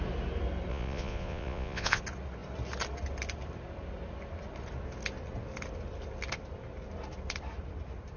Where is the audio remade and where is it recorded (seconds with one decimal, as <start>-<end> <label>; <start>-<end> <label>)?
0.0-0.7 recorded; 0.7-2.0 remade; 2.0-8.2 recorded